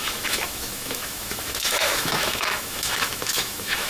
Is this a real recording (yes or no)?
no